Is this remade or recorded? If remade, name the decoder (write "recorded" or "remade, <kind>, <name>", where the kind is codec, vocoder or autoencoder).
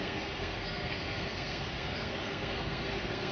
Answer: remade, codec, SNAC